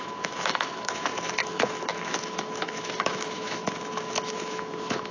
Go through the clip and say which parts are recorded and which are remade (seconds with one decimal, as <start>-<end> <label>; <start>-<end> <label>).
0.0-5.1 remade